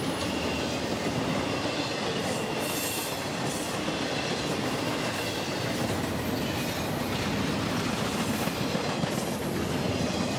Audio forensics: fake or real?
real